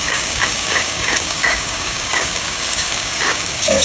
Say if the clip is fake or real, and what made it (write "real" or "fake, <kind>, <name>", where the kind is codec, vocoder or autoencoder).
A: fake, codec, DAC